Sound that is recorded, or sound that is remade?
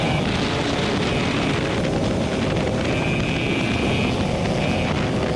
recorded